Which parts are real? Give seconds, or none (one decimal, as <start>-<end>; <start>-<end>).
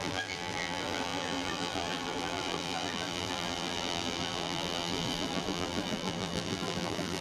none